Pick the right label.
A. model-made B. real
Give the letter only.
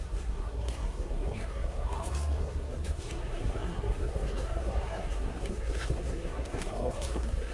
A